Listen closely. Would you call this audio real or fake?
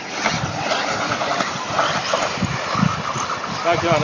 real